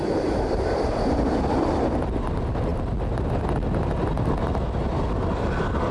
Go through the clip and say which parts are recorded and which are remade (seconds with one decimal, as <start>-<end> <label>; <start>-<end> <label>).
0.0-2.0 remade; 2.0-5.9 recorded